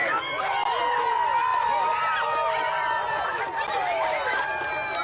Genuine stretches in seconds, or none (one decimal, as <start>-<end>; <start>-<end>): 0.8-1.5; 4.5-5.0